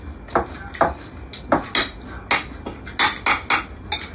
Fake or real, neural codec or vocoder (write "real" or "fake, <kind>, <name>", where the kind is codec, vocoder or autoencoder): real